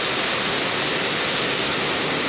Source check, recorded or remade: recorded